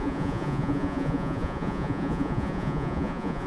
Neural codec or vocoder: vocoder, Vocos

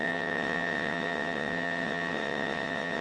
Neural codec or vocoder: vocoder, WaveNeXt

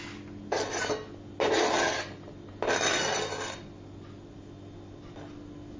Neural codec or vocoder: none